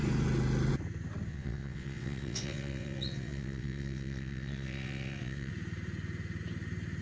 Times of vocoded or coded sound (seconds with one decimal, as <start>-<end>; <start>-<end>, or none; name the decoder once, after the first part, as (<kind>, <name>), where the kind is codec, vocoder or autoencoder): 1.3-5.5 (vocoder, WaveNeXt)